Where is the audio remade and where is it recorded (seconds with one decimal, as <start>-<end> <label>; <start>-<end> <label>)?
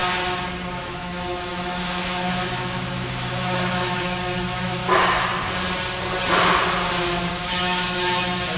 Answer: 0.0-0.8 recorded; 0.8-4.8 remade; 4.8-7.3 recorded; 7.3-8.6 remade